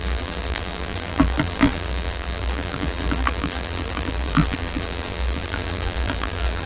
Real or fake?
fake